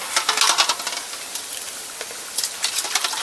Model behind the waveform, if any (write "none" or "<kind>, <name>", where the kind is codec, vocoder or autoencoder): none